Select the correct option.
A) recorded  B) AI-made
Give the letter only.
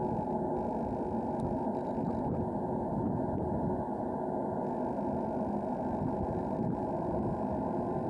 A